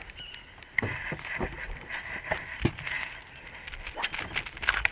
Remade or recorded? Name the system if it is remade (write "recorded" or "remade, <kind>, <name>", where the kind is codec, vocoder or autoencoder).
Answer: recorded